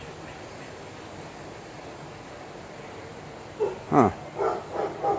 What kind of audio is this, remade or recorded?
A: recorded